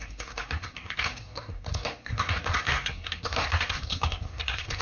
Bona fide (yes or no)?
no